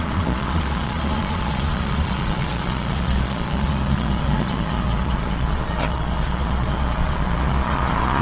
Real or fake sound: fake